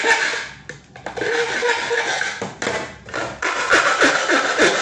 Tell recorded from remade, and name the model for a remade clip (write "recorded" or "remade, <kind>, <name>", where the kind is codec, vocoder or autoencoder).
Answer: recorded